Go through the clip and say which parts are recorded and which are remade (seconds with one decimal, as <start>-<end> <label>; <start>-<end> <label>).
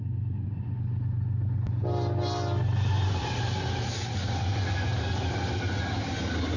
0.0-6.6 recorded